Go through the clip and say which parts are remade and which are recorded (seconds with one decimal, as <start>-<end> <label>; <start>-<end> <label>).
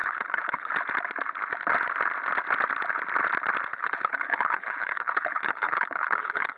0.0-0.7 remade; 0.7-3.7 recorded; 3.7-6.6 remade